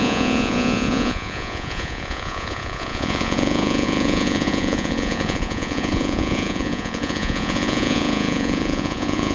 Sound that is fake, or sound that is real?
fake